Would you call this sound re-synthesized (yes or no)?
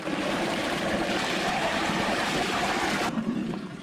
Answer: yes